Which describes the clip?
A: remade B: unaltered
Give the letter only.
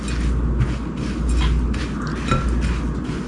B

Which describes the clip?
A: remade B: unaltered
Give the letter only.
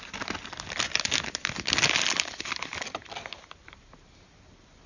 B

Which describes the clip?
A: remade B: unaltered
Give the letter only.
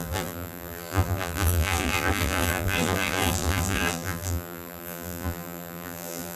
A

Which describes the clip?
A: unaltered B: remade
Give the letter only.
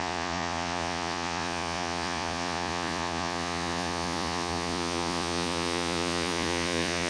B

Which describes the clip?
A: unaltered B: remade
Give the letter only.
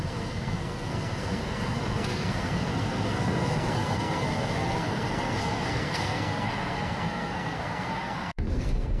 B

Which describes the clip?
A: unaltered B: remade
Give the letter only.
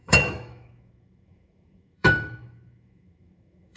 B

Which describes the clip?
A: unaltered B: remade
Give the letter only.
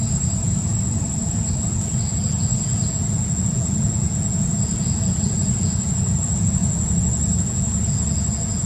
B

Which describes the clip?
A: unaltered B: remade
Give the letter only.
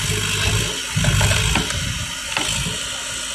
A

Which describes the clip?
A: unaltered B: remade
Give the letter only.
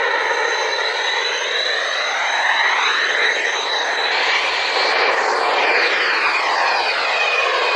A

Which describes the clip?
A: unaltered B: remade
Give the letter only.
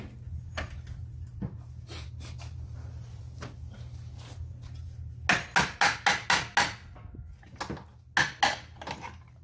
A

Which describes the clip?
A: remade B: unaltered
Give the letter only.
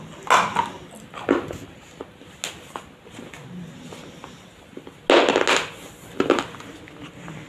B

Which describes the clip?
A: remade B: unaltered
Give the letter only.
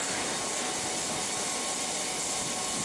B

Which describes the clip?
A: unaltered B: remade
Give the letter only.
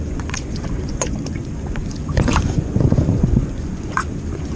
B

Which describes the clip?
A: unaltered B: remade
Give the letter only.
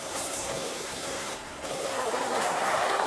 B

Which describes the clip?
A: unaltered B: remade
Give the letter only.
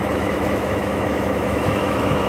B